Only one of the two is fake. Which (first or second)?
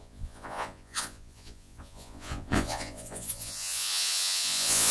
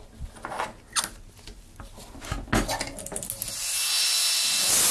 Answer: first